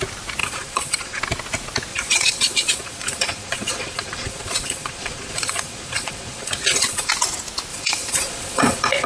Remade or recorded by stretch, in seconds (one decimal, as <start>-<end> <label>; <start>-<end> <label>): 0.0-0.4 recorded; 0.4-1.2 remade; 1.2-1.9 recorded; 1.9-7.1 remade; 7.1-7.7 recorded; 7.7-9.1 remade